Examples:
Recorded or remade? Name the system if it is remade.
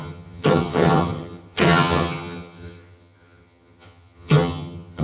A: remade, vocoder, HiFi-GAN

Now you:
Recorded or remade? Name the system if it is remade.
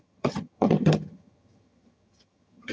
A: remade, vocoder, HiFi-GAN